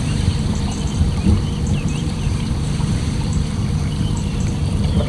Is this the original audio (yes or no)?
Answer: no